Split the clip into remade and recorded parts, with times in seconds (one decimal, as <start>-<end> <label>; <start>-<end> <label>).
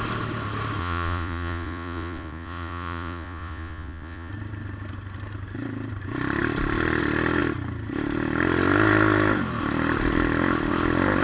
0.0-0.8 recorded; 0.8-4.3 remade; 4.3-11.2 recorded